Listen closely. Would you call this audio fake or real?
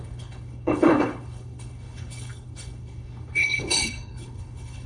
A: fake